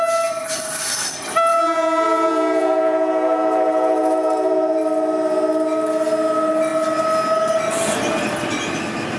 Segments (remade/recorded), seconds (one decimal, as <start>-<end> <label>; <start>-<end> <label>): 0.0-1.5 recorded; 1.5-4.8 remade; 4.8-9.2 recorded